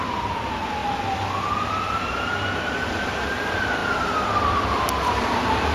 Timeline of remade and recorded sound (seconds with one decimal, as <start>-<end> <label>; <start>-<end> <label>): 0.0-0.8 remade; 0.8-2.5 recorded; 2.5-3.8 remade; 3.8-4.8 recorded; 4.8-5.7 remade